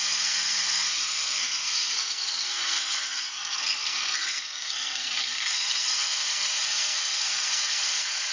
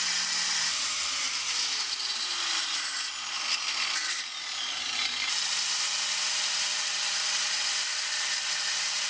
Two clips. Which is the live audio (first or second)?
second